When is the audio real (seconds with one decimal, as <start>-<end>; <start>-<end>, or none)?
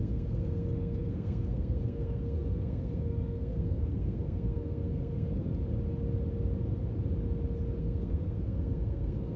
5.5-7.8